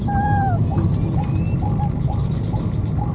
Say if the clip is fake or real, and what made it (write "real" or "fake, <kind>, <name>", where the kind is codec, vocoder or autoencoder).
real